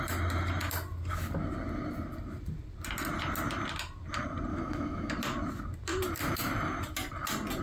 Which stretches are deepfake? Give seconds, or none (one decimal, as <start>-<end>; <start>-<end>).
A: 4.5-5.1